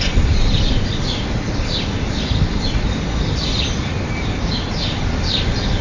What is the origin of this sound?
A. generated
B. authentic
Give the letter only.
B